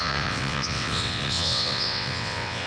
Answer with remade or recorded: remade